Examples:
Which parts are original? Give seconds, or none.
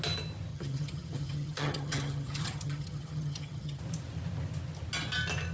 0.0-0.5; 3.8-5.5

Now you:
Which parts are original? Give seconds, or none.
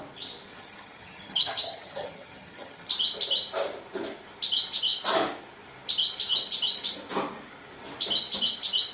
0.0-0.5; 2.9-8.9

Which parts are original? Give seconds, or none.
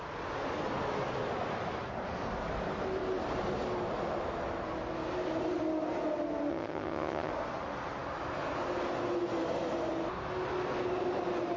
0.0-6.5; 7.3-11.6